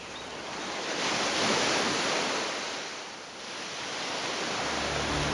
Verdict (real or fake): real